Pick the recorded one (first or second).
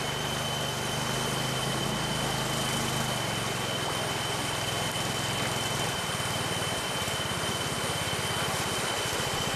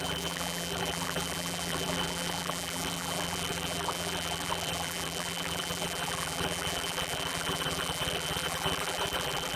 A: first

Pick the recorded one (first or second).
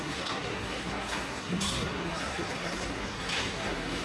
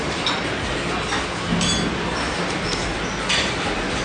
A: second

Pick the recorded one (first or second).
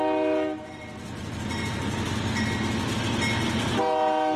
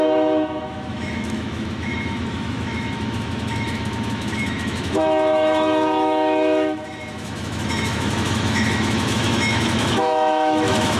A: first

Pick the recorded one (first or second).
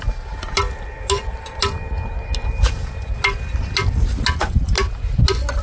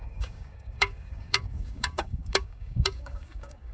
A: first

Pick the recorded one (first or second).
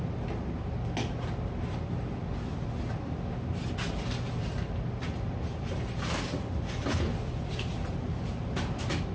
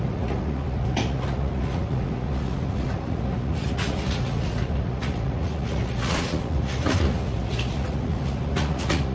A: first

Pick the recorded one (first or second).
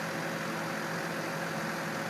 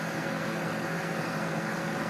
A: first